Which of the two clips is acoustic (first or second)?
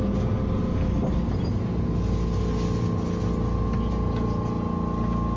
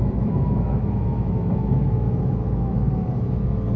first